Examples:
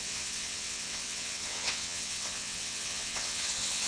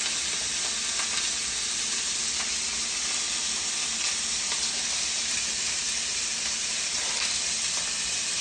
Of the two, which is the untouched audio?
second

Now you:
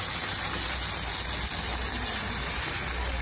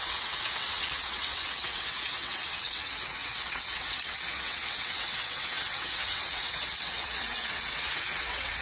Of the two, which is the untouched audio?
first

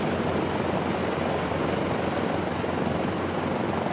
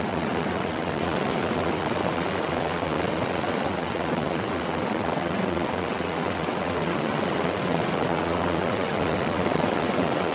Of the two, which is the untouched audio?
first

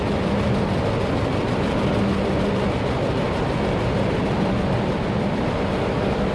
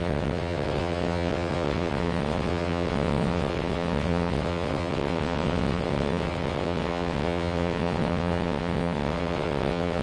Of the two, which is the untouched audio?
first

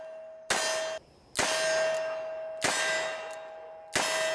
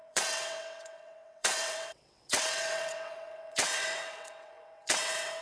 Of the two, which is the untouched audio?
first